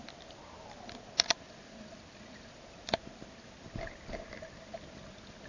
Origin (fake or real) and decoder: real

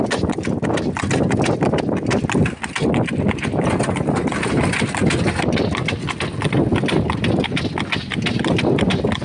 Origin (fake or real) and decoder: real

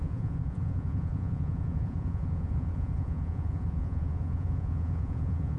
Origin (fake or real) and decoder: fake, vocoder, Vocos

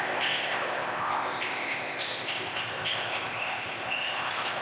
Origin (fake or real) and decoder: fake, codec, ZipCodec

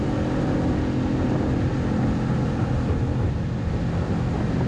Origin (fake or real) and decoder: real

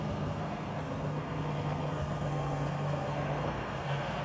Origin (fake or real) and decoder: fake, codec, SNAC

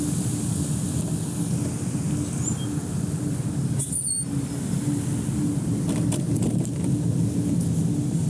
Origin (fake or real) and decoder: real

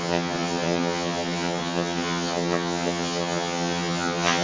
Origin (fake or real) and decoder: fake, vocoder, HiFi-GAN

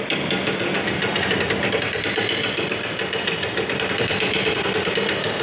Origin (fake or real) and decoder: fake, vocoder, BigVGAN v2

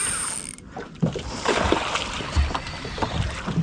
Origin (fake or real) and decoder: real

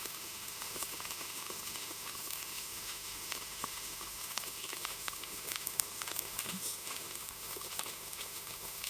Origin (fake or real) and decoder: fake, autoencoder, DAC-VAE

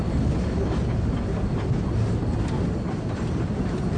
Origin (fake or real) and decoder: real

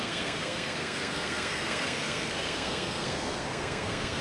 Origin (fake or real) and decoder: fake, codec, SNAC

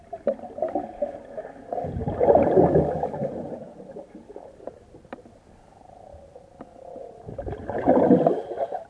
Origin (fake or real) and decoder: fake, vocoder, BigVGAN v2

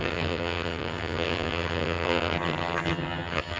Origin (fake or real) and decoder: fake, vocoder, HiFi-GAN